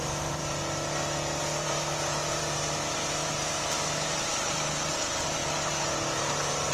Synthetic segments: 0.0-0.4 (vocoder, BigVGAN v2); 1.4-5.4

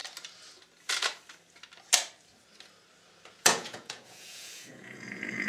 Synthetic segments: 3.3-5.5 (vocoder, Vocos)

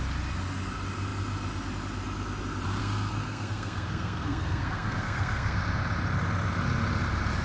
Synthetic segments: 2.8-5.6 (codec, SNAC)

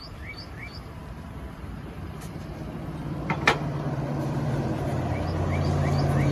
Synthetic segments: 1.0-4.8 (vocoder, BigVGAN v2)